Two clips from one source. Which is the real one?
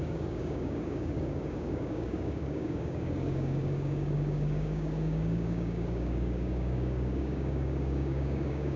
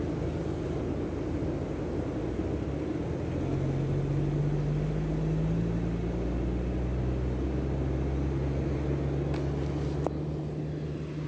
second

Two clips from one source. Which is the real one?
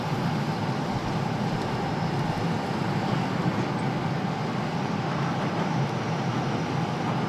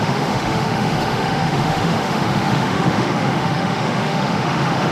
first